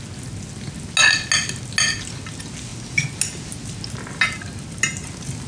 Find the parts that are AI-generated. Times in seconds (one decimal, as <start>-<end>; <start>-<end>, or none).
none